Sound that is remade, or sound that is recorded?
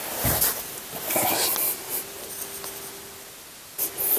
recorded